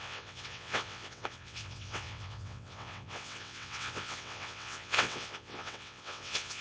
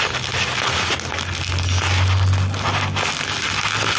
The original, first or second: second